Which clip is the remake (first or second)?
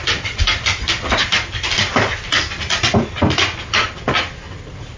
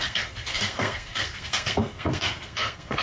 second